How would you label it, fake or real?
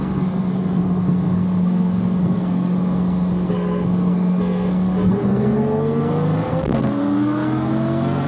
fake